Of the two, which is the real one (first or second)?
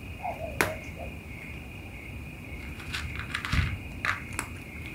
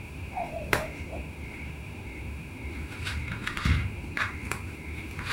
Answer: first